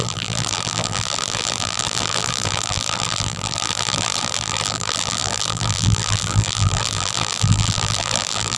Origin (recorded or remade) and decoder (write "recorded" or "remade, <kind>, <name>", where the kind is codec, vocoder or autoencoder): remade, vocoder, BigVGAN v2